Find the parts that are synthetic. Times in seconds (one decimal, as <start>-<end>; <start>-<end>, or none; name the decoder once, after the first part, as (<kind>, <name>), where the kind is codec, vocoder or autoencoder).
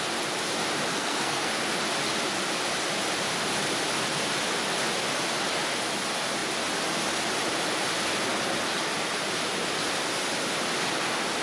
0.9-1.5 (codec, SNAC)